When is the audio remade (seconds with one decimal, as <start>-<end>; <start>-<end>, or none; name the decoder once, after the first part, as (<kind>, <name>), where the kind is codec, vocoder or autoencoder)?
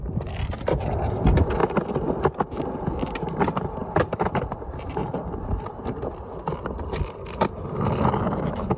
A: 0.0-1.6 (vocoder, BigVGAN v2); 2.6-8.8